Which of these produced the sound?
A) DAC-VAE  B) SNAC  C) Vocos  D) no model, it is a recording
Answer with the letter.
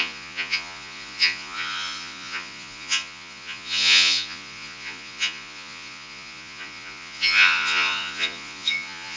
C